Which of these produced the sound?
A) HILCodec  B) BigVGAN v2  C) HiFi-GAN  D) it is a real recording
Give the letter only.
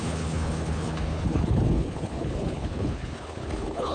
A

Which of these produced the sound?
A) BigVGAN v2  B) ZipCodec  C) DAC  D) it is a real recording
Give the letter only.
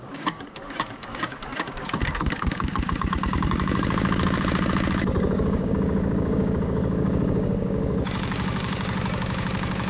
C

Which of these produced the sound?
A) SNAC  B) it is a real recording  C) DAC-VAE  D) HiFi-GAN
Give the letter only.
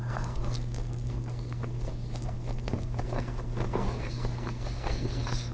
A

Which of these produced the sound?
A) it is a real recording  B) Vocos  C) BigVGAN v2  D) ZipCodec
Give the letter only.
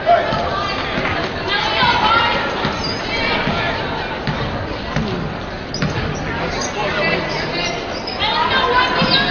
A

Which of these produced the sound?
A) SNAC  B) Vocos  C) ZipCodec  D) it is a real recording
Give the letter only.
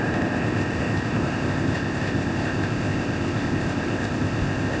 C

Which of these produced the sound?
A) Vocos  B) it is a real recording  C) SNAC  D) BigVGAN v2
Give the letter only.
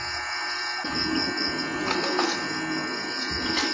B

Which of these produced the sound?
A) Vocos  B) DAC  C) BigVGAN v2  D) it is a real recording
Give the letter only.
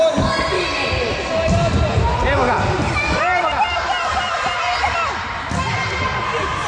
D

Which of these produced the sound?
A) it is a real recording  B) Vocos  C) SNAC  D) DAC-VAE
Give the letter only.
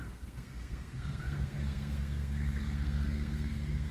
C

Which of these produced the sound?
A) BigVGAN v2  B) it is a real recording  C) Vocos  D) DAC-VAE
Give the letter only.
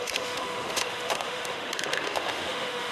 D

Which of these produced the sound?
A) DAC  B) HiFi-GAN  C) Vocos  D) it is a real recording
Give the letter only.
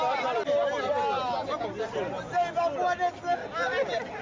D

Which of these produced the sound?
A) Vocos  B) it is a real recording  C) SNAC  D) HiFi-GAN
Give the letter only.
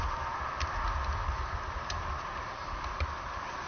B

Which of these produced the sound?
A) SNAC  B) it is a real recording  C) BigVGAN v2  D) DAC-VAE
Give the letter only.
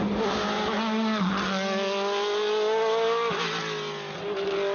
B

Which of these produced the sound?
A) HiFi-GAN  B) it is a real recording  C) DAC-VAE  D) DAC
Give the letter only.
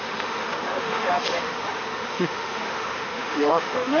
C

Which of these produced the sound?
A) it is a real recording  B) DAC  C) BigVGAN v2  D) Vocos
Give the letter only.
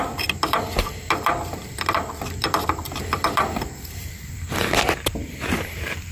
C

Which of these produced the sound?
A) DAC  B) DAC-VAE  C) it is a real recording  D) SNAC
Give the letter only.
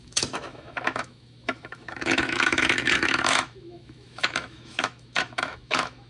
B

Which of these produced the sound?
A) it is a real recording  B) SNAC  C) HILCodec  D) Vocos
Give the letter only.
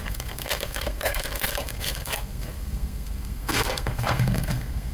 B